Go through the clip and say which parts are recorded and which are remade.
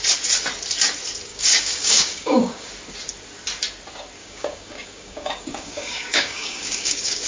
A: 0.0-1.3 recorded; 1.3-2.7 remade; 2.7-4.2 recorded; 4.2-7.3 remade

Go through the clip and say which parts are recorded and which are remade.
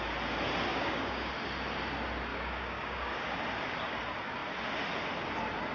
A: 0.0-0.7 recorded; 0.7-1.3 remade; 1.3-2.3 recorded; 2.3-3.3 remade; 3.3-5.7 recorded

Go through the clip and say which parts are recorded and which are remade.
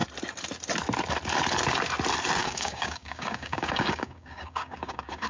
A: 0.0-2.4 recorded; 2.4-5.3 remade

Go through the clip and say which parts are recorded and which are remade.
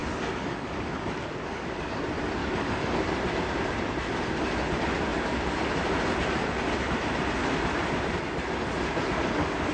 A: 0.0-1.9 remade; 1.9-2.4 recorded; 2.4-3.1 remade; 3.1-9.7 recorded